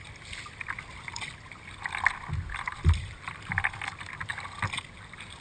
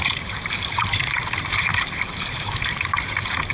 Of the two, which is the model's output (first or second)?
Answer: second